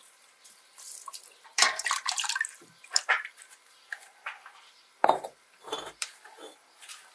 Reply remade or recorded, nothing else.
remade